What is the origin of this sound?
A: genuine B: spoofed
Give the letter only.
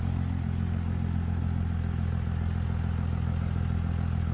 A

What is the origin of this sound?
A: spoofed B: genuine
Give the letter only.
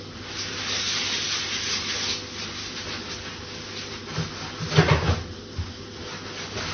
B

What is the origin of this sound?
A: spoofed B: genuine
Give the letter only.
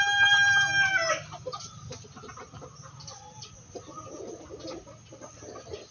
B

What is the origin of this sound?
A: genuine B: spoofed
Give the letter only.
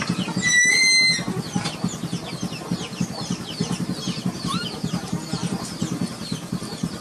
A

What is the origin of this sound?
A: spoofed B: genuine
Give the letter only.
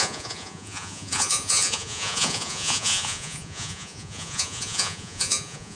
A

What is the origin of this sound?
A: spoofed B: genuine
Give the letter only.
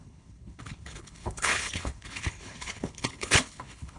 A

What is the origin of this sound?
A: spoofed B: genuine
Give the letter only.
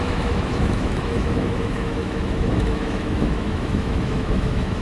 A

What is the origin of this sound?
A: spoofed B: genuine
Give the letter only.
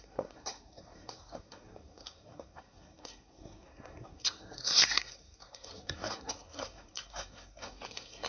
A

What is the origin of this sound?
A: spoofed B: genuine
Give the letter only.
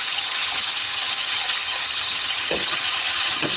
A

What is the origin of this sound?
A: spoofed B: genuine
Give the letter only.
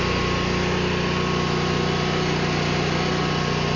B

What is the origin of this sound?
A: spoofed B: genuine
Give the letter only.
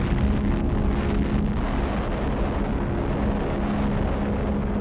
B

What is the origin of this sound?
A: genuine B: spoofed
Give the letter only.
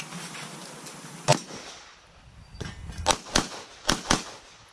A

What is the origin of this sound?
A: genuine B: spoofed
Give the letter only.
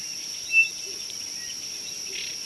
A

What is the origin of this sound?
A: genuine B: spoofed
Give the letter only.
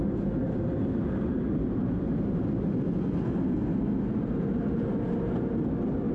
A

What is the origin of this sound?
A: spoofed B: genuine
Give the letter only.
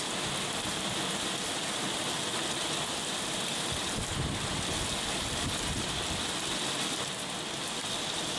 B